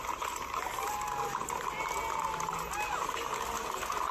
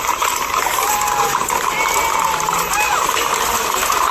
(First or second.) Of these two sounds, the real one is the first